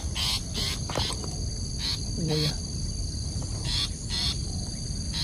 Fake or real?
fake